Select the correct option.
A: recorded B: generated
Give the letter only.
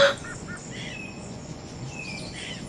B